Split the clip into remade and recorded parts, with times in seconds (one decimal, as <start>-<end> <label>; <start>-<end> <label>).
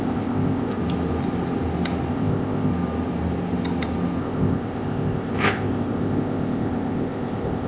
0.0-0.8 remade; 0.8-2.1 recorded; 2.1-2.7 remade; 2.7-4.2 recorded; 4.2-7.7 remade